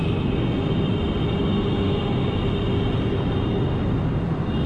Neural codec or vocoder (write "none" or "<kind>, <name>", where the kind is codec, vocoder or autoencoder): none